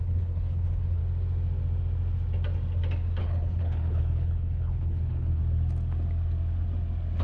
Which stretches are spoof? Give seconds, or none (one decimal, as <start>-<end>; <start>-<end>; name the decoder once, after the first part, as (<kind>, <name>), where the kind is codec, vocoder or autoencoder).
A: 0.0-1.0 (codec, HILCodec); 3.2-5.4